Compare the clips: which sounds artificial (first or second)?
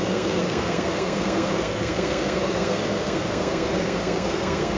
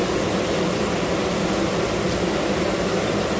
first